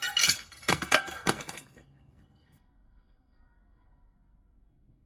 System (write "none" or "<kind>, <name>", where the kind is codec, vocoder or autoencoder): codec, SNAC